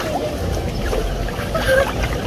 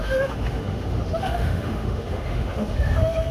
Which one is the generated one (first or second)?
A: second